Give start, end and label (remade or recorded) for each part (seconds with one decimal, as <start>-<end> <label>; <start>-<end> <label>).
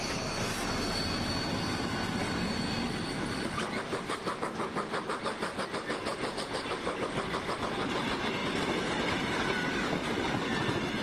0.0-9.7 recorded; 9.7-10.6 remade; 10.6-11.0 recorded